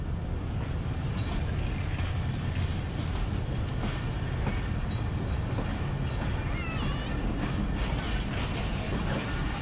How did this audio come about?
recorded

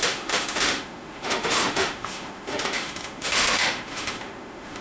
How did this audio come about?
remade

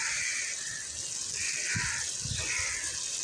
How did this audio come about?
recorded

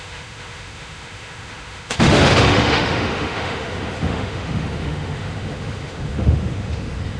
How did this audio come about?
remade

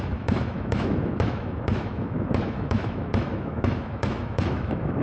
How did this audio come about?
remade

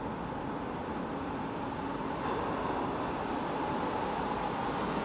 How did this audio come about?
recorded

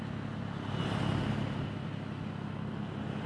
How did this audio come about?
recorded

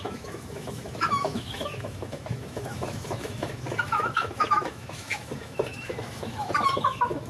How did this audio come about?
remade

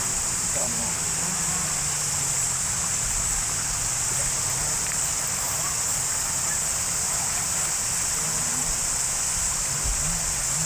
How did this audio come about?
recorded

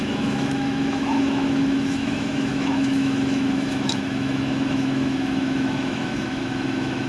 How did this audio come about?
remade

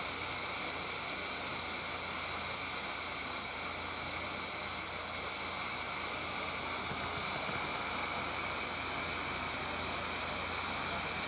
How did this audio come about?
recorded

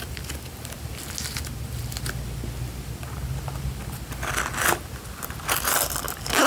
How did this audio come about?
recorded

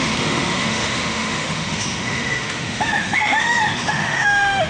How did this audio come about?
remade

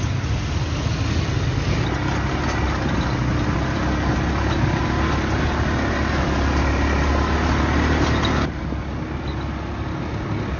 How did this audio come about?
recorded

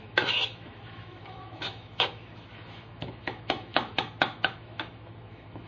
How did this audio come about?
remade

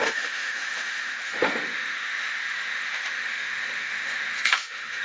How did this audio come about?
remade